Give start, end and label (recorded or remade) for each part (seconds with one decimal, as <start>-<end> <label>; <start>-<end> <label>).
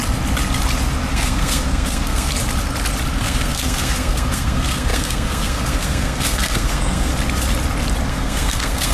0.0-1.1 recorded; 1.1-2.3 remade; 2.3-3.1 recorded; 3.1-7.1 remade; 7.1-8.1 recorded; 8.1-8.9 remade